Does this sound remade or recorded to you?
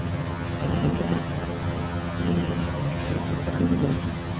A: remade